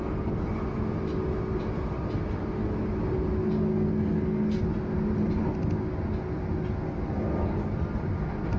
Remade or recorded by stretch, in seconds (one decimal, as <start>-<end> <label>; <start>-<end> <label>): 0.0-0.5 remade; 0.5-3.7 recorded; 3.7-4.6 remade; 4.6-8.6 recorded